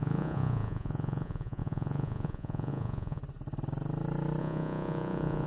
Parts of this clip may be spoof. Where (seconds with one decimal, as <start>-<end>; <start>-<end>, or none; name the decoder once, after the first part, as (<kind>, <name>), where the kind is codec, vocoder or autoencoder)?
0.0-3.2 (vocoder, Vocos); 4.4-5.5

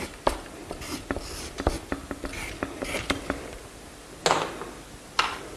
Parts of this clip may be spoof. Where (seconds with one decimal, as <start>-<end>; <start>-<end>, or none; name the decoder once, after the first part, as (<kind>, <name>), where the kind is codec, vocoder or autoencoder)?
none

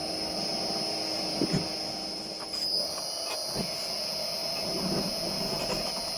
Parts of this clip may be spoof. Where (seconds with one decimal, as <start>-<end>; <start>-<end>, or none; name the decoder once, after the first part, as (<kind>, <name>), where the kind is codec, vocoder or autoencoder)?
none

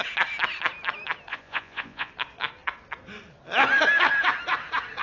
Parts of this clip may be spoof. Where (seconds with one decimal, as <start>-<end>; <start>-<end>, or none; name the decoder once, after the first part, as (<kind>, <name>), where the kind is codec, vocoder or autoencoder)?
1.3-2.1 (vocoder, Vocos)

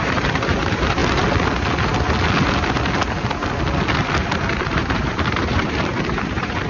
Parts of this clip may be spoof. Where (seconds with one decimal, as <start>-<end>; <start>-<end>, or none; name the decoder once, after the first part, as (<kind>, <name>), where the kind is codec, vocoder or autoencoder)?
0.0-1.0 (vocoder, BigVGAN v2); 4.6-6.7

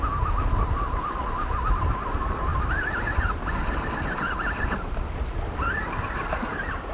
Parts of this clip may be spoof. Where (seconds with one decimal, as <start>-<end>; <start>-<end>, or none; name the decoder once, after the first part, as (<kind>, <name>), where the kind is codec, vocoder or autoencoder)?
none